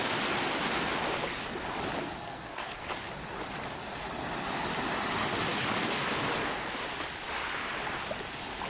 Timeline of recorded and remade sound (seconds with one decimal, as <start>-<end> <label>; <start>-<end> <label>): 0.0-2.0 recorded; 2.0-2.9 remade; 2.9-8.7 recorded